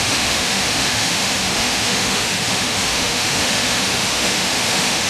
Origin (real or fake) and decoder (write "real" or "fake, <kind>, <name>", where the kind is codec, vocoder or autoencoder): fake, autoencoder, DAC-VAE